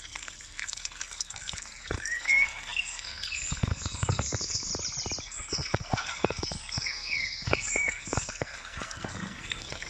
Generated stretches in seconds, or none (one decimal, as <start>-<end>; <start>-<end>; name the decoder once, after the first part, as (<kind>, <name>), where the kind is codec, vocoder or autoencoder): 0.0-4.7 (codec, SNAC); 5.2-9.9